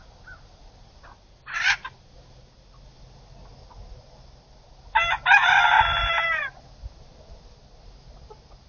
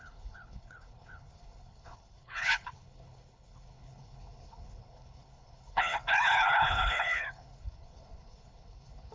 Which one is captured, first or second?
first